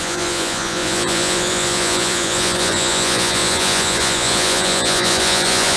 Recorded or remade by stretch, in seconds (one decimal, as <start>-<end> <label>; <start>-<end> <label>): 0.0-5.8 remade